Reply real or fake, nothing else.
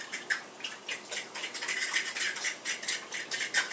real